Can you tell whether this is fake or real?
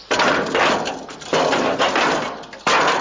real